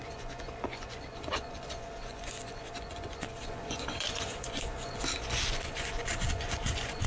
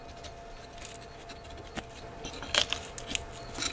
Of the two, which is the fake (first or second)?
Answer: first